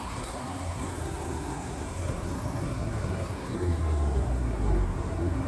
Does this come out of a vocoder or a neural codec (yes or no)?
yes